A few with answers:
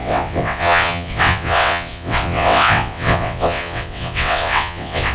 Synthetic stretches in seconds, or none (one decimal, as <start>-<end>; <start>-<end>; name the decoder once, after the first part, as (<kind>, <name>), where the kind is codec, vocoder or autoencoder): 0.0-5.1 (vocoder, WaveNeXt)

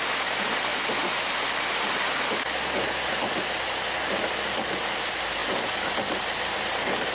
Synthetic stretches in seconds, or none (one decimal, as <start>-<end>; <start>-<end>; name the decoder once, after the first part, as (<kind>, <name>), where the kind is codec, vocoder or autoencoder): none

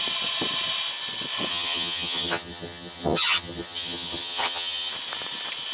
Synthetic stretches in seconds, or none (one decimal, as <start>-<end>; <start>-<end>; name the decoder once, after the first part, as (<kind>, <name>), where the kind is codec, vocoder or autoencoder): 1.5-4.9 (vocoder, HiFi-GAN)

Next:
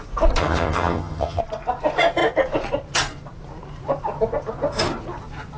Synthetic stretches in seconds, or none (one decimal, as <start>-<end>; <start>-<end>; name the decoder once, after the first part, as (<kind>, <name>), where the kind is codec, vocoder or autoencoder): 0.4-1.4 (vocoder, HiFi-GAN)